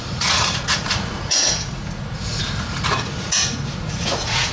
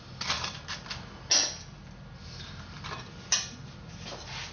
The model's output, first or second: first